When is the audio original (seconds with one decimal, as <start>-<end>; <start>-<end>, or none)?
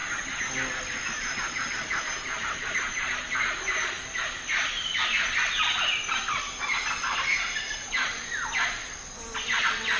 0.0-10.0